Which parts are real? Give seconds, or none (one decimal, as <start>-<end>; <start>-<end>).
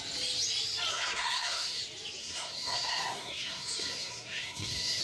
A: 0.0-0.9; 1.8-2.2